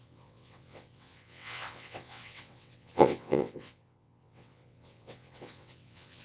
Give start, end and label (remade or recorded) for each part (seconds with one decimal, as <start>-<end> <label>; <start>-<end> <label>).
0.0-6.2 remade